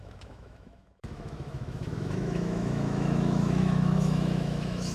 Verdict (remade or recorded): remade